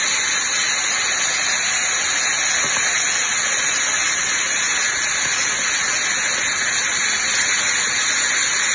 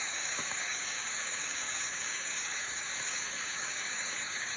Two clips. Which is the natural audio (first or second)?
first